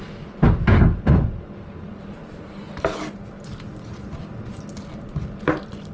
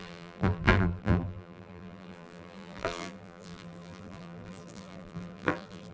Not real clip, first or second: second